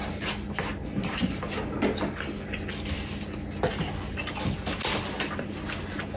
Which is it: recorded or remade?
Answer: recorded